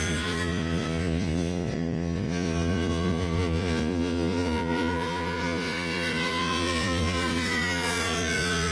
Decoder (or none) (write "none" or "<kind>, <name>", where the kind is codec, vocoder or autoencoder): vocoder, Vocos